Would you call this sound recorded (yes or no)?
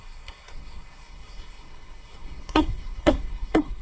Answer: no